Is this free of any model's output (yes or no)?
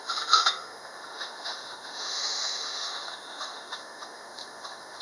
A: no